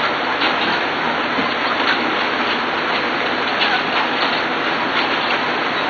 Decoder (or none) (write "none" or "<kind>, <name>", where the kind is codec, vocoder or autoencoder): none